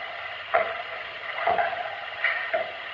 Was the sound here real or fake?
fake